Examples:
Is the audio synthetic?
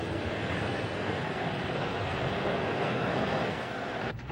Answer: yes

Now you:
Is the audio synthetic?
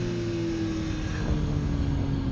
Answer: no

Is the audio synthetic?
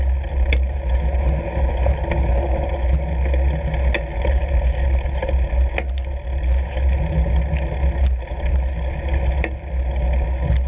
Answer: no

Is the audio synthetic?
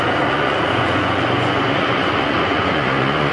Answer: yes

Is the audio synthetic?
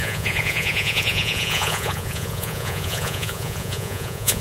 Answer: yes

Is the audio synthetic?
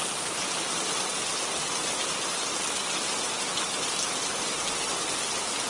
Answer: no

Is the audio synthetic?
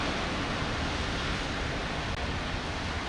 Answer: no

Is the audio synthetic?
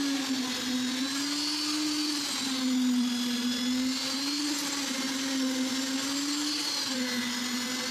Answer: no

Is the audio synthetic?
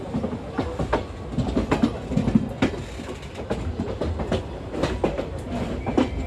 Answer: no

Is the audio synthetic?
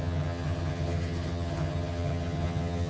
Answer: yes